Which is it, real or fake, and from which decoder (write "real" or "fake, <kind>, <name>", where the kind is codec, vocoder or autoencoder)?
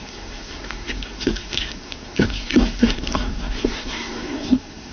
fake, codec, SNAC